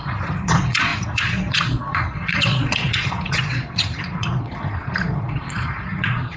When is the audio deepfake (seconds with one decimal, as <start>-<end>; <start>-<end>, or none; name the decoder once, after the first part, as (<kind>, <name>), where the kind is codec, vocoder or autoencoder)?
0.0-6.4 (vocoder, Vocos)